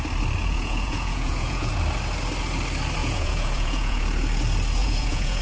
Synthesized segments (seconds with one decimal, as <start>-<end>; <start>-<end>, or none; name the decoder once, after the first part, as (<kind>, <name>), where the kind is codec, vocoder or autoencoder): 0.4-1.7 (vocoder, Vocos); 3.0-4.0; 4.8-5.4